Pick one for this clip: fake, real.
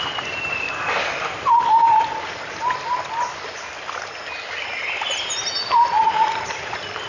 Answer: real